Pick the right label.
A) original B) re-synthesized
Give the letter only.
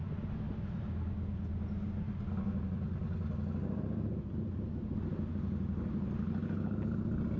A